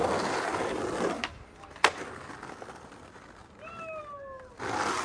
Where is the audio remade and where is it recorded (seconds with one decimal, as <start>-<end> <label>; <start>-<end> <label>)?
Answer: 0.0-1.3 recorded; 1.3-2.0 remade; 2.0-3.4 recorded; 3.4-4.0 remade; 4.0-5.0 recorded